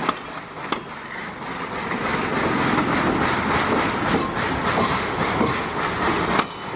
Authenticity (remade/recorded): recorded